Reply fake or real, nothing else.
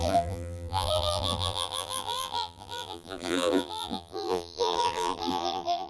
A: fake